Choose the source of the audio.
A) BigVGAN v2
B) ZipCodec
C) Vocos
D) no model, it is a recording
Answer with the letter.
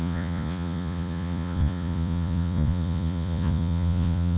C